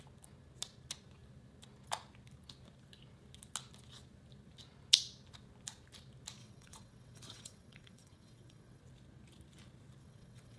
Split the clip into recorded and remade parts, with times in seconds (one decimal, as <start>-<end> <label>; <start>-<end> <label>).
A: 0.0-6.4 recorded; 6.4-8.8 remade; 8.8-10.0 recorded; 10.0-10.6 remade